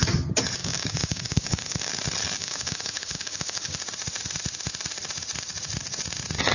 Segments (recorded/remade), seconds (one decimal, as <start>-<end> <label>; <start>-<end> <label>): 0.0-0.6 recorded; 0.6-1.9 remade; 1.9-2.4 recorded; 2.4-3.8 remade; 3.8-6.5 recorded